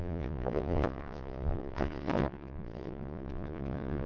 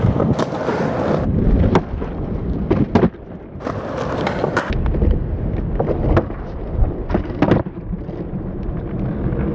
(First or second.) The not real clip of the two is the first